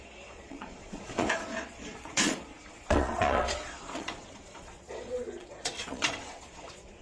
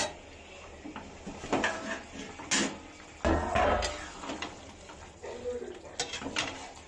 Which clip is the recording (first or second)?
second